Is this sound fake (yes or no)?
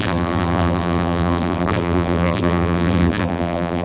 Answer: yes